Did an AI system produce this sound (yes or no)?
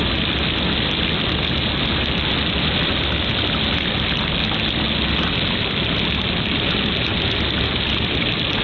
no